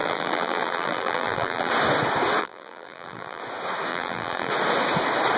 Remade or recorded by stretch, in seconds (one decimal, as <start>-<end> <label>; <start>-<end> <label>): 0.0-1.7 remade; 1.7-2.4 recorded; 2.4-3.4 remade; 3.4-3.9 recorded; 3.9-4.5 remade; 4.5-5.4 recorded